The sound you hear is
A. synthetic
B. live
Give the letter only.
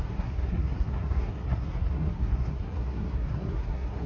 A